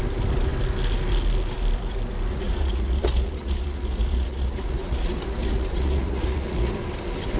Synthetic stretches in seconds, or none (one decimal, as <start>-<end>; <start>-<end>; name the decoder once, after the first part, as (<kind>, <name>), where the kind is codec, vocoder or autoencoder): 2.3-6.7 (vocoder, Vocos)